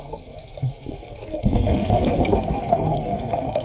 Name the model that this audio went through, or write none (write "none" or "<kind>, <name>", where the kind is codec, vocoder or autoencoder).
codec, SNAC